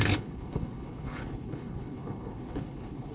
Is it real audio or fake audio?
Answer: fake